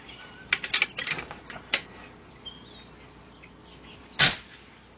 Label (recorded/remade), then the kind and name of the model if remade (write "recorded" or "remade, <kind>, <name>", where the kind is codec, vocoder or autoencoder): recorded